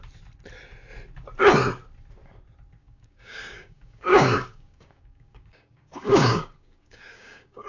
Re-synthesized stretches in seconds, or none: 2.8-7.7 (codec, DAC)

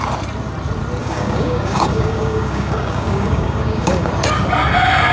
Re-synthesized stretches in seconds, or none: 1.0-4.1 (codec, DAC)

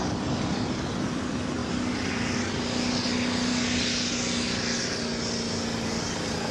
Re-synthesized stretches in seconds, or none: none

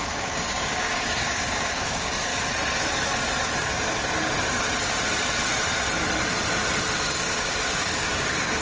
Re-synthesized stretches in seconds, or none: 0.0-2.3 (codec, DAC); 7.1-8.6